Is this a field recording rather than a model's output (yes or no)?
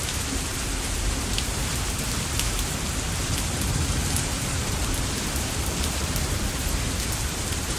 yes